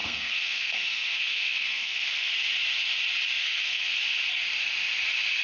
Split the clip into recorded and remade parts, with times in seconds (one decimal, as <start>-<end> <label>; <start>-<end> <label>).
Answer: 0.0-2.3 remade; 2.3-3.4 recorded; 3.4-3.9 remade; 3.9-5.4 recorded